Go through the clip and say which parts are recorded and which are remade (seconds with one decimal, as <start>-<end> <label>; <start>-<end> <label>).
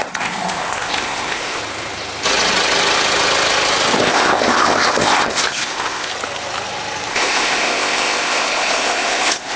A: 0.0-1.6 remade; 1.6-4.0 recorded; 4.0-6.1 remade; 6.1-7.1 recorded; 7.1-9.6 remade